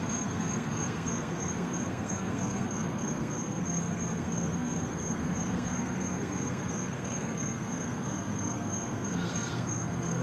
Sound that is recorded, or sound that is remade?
remade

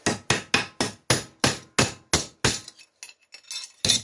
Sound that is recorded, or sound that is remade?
recorded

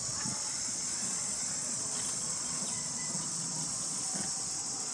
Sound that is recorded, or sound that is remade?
remade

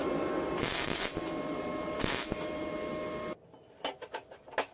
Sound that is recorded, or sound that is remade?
recorded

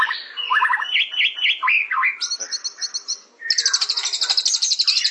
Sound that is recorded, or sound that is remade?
recorded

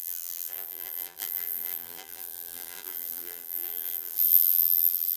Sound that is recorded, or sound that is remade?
remade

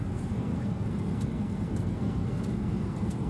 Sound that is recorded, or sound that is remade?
remade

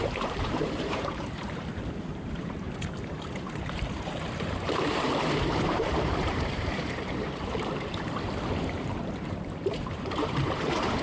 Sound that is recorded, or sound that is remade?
remade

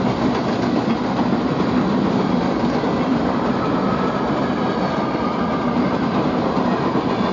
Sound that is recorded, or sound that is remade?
recorded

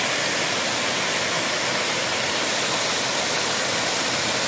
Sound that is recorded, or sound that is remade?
recorded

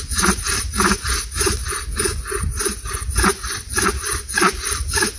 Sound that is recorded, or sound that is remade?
recorded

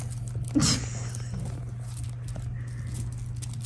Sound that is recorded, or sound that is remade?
recorded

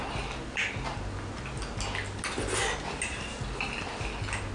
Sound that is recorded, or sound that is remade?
recorded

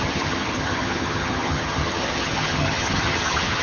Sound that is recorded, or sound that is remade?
remade